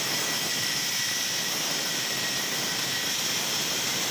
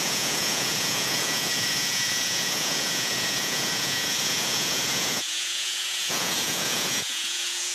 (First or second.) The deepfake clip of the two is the second